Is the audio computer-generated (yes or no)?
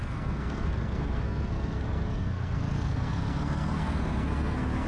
yes